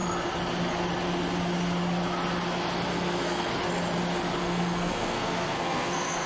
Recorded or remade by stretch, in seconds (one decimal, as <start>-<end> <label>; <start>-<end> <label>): 0.0-2.9 recorded; 2.9-3.5 remade; 3.5-4.4 recorded; 4.4-6.3 remade